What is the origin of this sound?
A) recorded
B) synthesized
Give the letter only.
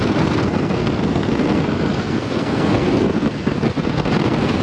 B